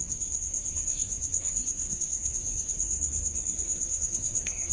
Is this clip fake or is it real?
fake